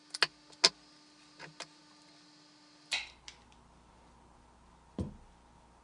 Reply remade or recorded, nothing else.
recorded